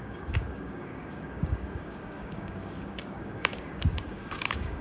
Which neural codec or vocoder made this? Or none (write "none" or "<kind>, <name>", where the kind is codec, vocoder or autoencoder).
codec, DAC